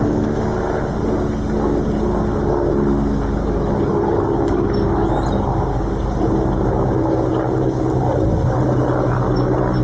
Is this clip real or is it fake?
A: real